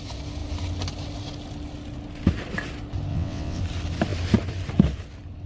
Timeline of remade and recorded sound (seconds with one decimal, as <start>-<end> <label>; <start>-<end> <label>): 0.0-3.1 recorded; 3.1-3.6 remade; 3.6-5.5 recorded